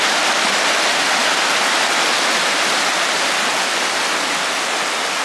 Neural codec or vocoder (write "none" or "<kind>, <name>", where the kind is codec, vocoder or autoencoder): none